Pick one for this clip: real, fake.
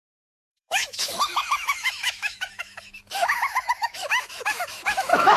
fake